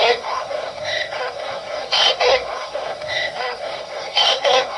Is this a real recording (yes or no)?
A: no